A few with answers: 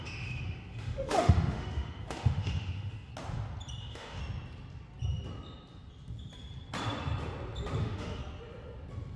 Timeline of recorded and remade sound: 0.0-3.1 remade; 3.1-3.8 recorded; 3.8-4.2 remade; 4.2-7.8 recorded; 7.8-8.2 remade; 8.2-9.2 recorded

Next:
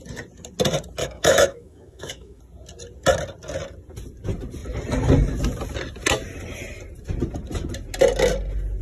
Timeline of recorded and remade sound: 0.0-1.0 recorded; 1.0-2.4 remade; 2.4-8.8 recorded

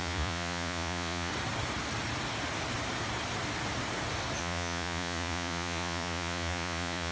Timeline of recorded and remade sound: 0.0-1.3 remade; 1.3-4.4 recorded; 4.4-7.1 remade

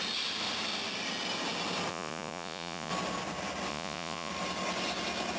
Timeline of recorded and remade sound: 0.0-1.9 recorded; 1.9-2.9 remade; 2.9-3.7 recorded; 3.7-4.3 remade; 4.3-5.4 recorded

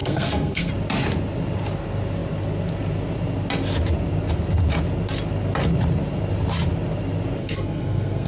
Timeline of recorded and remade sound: 0.0-0.7 remade; 0.7-7.4 recorded; 7.4-8.3 remade

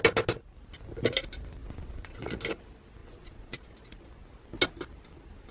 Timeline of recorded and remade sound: 0.0-1.6 recorded; 1.6-2.4 remade; 2.4-3.0 recorded; 3.0-3.7 remade; 3.7-5.5 recorded

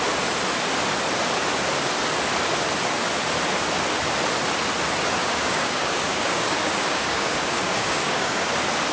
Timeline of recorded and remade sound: 0.0-5.2 recorded; 5.2-8.5 remade; 8.5-8.9 recorded

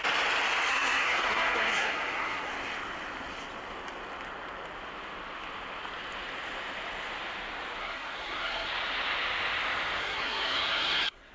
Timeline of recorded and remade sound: 0.0-0.7 recorded; 0.7-2.5 remade; 2.5-7.8 recorded; 7.8-8.7 remade; 8.7-10.0 recorded; 10.0-11.3 remade